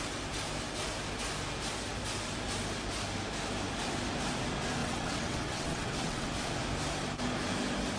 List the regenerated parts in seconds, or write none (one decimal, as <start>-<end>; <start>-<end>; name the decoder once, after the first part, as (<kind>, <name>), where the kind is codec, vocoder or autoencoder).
4.8-6.3 (vocoder, WaveNeXt)